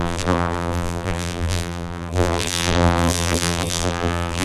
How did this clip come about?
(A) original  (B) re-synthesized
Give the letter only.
B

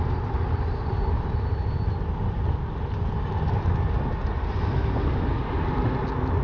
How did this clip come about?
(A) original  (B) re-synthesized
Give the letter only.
B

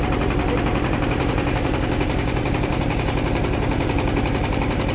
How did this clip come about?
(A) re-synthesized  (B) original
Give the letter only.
A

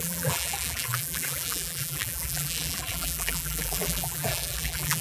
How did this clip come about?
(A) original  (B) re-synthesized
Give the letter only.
B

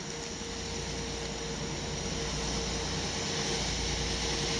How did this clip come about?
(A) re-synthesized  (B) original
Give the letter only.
B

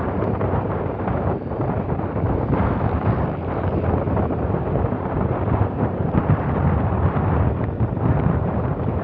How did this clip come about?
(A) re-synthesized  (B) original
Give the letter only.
A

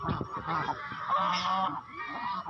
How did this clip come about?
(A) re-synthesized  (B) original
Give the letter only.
A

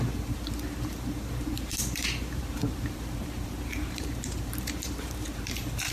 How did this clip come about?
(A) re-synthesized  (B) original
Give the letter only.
A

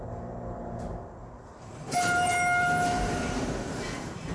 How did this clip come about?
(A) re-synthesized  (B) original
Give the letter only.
A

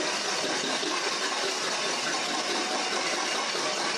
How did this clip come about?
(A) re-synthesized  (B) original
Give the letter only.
B